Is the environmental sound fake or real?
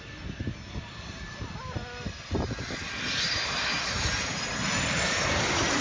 real